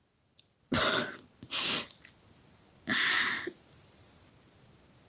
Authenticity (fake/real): real